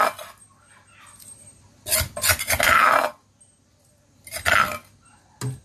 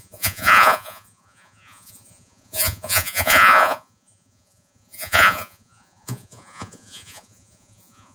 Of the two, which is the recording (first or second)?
first